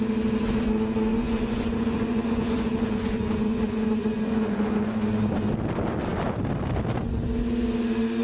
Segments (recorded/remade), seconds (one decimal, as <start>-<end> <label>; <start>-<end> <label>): 0.0-1.1 recorded; 1.1-5.0 remade; 5.0-8.2 recorded